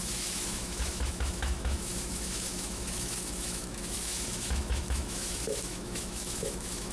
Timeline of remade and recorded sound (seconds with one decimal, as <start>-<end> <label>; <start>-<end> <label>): 0.0-6.9 remade